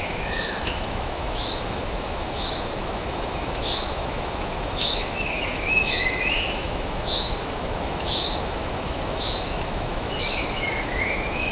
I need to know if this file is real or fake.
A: fake